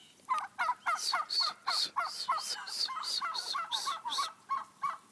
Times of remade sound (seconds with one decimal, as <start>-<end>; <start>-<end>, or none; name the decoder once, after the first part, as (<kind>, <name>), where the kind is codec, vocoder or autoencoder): none